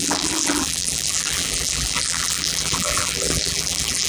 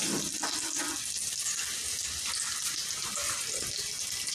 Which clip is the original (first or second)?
second